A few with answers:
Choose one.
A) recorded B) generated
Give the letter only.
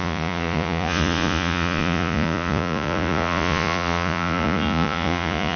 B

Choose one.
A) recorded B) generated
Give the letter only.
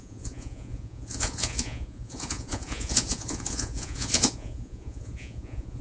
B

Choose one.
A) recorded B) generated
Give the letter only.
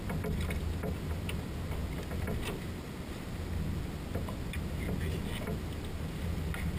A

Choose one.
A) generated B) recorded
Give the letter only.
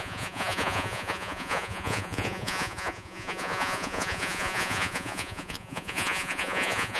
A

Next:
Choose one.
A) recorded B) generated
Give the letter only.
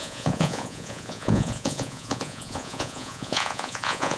B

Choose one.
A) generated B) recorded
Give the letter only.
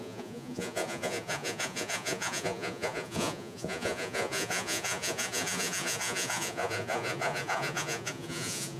A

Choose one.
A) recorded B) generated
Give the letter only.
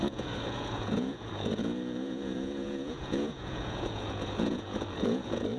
B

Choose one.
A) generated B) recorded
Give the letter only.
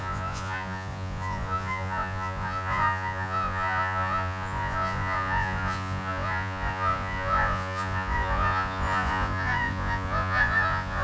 A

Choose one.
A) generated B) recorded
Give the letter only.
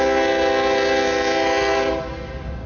B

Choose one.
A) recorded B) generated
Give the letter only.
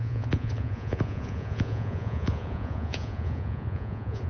B